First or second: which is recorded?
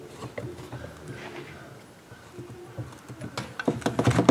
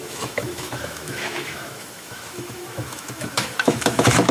first